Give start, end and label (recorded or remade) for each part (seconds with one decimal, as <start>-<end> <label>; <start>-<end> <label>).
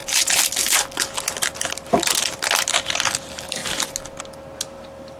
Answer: 0.0-5.2 recorded